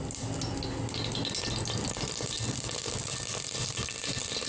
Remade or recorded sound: recorded